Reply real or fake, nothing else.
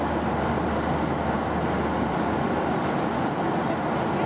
real